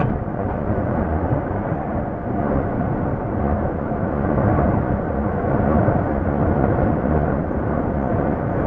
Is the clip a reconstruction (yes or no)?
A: yes